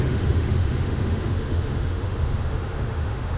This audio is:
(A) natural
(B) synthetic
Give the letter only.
B